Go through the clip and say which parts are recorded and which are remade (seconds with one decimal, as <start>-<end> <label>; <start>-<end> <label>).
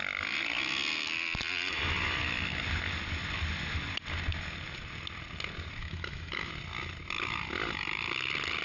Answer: 0.0-5.8 recorded; 5.8-6.5 remade; 6.5-8.6 recorded